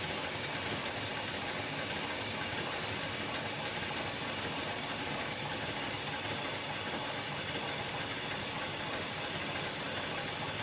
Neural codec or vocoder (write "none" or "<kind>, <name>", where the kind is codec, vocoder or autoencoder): none